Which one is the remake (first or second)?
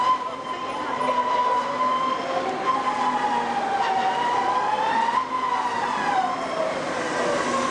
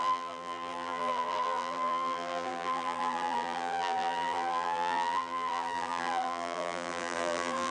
second